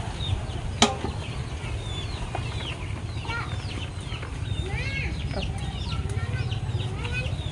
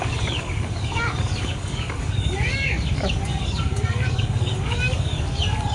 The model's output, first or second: second